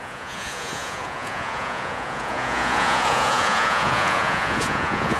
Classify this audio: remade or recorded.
remade